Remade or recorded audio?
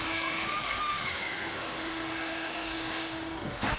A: remade